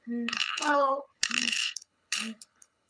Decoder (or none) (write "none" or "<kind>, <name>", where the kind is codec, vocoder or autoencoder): codec, HILCodec